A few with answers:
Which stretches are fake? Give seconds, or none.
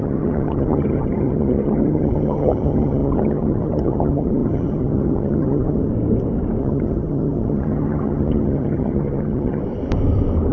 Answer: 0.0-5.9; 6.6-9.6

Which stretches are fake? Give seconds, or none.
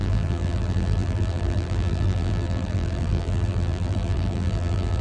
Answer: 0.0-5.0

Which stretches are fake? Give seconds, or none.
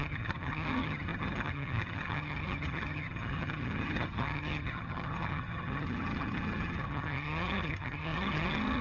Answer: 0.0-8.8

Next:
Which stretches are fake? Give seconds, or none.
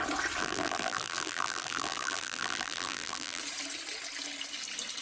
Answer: 0.4-3.4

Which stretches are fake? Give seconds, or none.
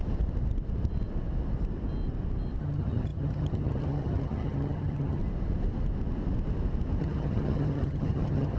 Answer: 2.6-5.2; 7.0-8.6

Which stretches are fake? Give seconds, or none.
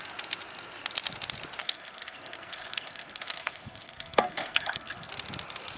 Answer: 1.6-5.1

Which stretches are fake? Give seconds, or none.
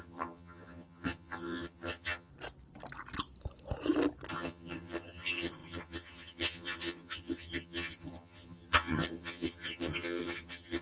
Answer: 0.0-2.3; 4.3-10.8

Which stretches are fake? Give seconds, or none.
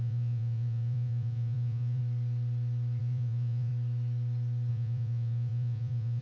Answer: 0.0-2.0; 3.0-3.7; 4.7-6.2